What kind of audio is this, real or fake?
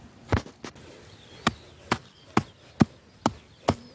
real